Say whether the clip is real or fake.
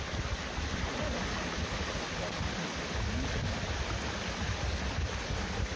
real